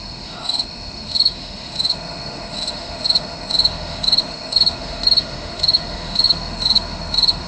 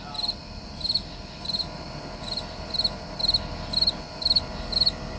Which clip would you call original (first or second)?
second